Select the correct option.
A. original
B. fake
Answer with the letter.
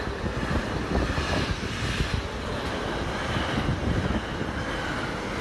A